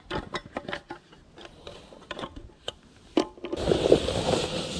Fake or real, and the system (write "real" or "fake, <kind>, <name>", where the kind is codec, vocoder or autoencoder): real